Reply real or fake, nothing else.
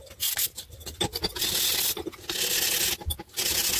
real